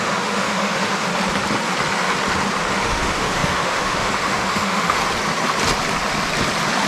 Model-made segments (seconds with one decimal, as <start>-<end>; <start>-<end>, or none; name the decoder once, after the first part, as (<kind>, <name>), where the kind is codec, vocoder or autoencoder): 0.0-1.1 (autoencoder, DAC-VAE); 2.8-5.0